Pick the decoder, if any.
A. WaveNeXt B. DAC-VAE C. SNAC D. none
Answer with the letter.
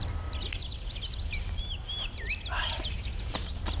D